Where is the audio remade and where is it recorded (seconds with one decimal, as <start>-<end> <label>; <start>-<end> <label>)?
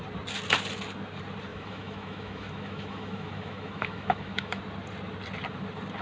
0.0-1.5 recorded; 1.5-4.6 remade; 4.6-6.0 recorded